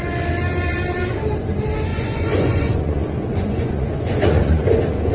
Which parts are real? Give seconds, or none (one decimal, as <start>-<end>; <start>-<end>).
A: 0.0-1.9